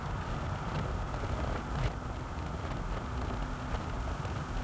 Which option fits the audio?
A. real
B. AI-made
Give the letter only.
A